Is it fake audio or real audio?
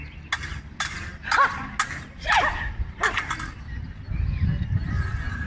real